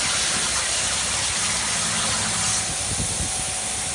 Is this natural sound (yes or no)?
yes